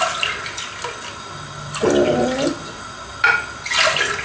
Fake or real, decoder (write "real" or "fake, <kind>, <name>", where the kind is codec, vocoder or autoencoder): real